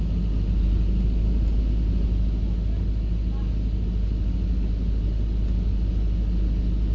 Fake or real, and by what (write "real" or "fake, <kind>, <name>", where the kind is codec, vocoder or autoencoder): real